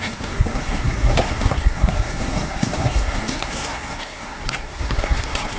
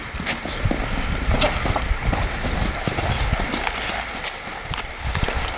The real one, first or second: second